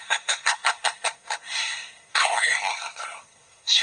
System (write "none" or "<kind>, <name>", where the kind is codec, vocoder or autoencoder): codec, SNAC